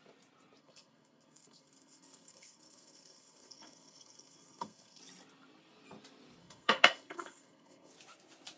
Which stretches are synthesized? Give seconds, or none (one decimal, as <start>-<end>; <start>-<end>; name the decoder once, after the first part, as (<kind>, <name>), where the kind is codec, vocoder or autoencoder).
0.6-5.0 (codec, SNAC); 6.4-7.9